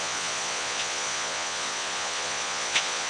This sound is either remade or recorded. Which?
remade